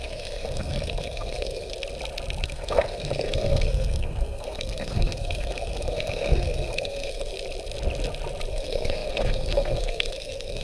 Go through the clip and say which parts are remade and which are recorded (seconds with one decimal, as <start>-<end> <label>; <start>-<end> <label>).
0.0-1.7 remade; 1.7-2.4 recorded; 2.4-7.3 remade; 7.3-8.5 recorded; 8.5-10.6 remade